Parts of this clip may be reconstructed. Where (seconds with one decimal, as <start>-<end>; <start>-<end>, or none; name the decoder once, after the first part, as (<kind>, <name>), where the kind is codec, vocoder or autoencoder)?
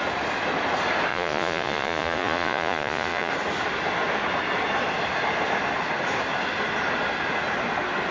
1.1-3.3 (vocoder, Vocos)